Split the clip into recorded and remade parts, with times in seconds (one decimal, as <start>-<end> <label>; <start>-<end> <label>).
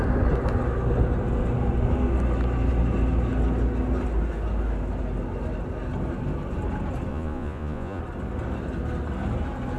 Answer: 0.0-7.1 recorded; 7.1-8.0 remade; 8.0-9.8 recorded